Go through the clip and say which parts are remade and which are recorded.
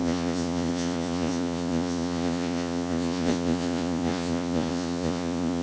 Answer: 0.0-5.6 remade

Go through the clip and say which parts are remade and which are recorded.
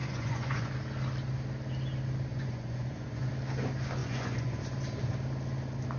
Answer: 0.0-0.7 remade; 0.7-2.3 recorded; 2.3-3.3 remade; 3.3-4.0 recorded; 4.0-4.6 remade; 4.6-6.0 recorded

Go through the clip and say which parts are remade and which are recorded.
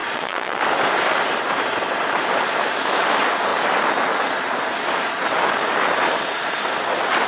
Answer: 0.0-0.6 remade; 0.6-7.3 recorded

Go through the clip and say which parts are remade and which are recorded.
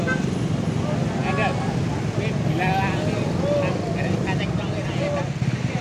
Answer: 0.0-5.8 recorded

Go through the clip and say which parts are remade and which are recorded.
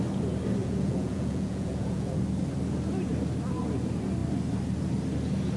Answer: 0.0-0.6 recorded; 0.6-2.2 remade; 2.2-5.6 recorded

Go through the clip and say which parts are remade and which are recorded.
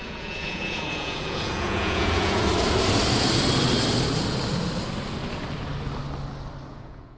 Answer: 0.0-2.4 remade; 2.4-6.7 recorded; 6.7-7.2 remade